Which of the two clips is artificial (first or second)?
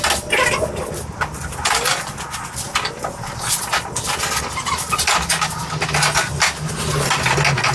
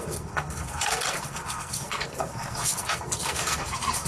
second